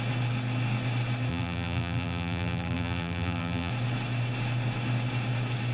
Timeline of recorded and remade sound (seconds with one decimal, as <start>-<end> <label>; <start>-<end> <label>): 0.0-1.3 recorded; 1.3-3.7 remade; 3.7-5.7 recorded